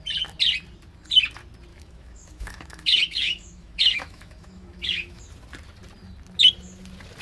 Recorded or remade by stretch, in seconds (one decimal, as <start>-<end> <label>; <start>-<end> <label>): 0.0-1.7 recorded; 1.7-5.2 remade; 5.2-7.2 recorded